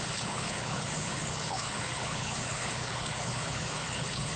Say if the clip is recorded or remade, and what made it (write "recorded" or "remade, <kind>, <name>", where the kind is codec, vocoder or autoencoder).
remade, codec, HILCodec